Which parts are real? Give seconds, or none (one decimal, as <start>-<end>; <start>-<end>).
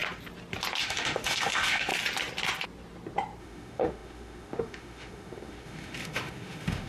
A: 0.0-0.8; 1.9-3.4